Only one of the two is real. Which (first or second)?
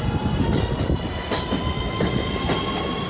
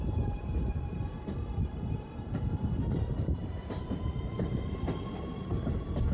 first